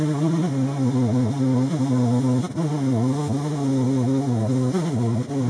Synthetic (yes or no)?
no